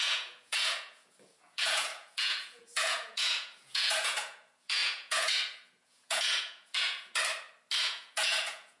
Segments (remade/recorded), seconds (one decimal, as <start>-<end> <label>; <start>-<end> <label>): 0.0-7.1 remade; 7.1-7.8 recorded; 7.8-8.8 remade